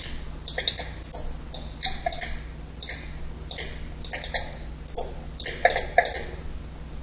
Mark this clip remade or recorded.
recorded